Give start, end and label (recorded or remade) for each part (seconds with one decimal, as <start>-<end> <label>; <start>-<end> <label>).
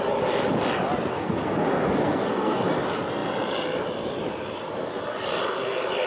0.0-1.1 recorded; 1.1-2.6 remade; 2.6-6.1 recorded